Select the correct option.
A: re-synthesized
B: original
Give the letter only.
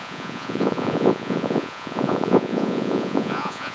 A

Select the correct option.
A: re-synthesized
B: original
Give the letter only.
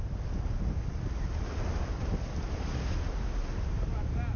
B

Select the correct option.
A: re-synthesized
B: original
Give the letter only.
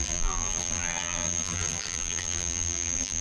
A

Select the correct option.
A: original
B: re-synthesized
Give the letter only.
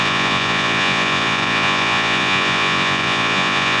B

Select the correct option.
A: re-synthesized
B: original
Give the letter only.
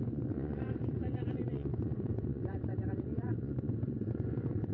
A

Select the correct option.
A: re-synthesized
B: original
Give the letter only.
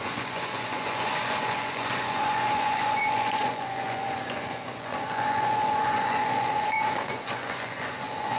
A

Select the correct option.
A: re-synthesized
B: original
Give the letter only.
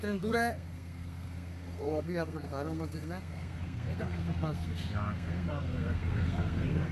A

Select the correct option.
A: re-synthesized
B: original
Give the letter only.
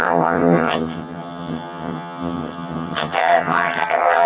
A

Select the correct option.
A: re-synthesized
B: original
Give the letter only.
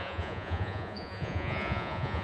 A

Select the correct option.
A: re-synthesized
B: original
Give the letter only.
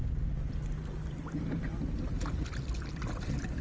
B